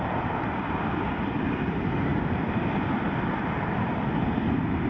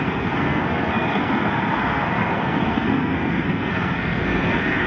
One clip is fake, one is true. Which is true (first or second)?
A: first